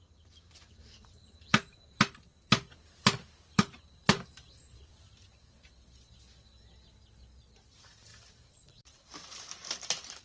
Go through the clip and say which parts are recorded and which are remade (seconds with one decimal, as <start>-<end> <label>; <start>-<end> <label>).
0.0-0.8 recorded; 0.8-2.0 remade; 2.0-4.0 recorded; 4.0-4.9 remade; 4.9-8.1 recorded; 8.1-10.2 remade

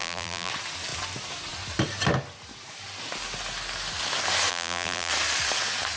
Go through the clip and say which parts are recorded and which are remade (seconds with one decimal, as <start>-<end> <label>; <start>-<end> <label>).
0.0-0.5 remade; 0.5-4.5 recorded; 4.5-5.1 remade; 5.1-6.0 recorded

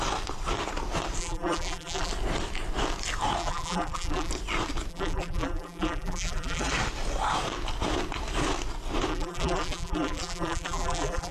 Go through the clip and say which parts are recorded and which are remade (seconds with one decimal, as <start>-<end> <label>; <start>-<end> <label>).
0.0-1.2 recorded; 1.2-2.1 remade; 2.1-3.4 recorded; 3.4-4.3 remade; 4.3-4.9 recorded; 4.9-6.7 remade; 6.7-9.1 recorded; 9.1-11.3 remade

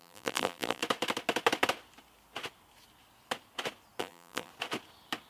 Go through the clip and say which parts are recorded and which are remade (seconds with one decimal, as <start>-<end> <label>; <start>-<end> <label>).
0.0-0.8 remade; 0.8-4.0 recorded; 4.0-4.5 remade; 4.5-5.3 recorded